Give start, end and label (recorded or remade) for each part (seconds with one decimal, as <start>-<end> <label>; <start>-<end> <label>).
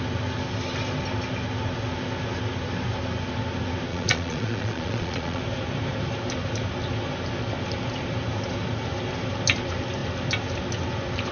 0.0-3.9 recorded; 3.9-5.4 remade; 5.4-11.3 recorded